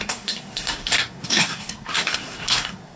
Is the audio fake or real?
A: fake